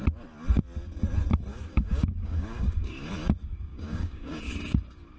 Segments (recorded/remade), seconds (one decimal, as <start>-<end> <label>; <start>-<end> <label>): 0.0-1.5 recorded; 1.5-3.1 remade; 3.1-3.7 recorded; 3.7-4.4 remade; 4.4-5.2 recorded